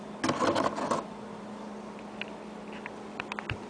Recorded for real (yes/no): yes